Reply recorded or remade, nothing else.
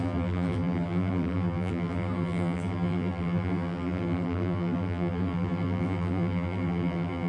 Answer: remade